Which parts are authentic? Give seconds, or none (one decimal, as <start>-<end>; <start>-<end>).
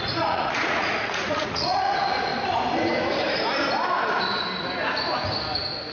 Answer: 2.3-5.9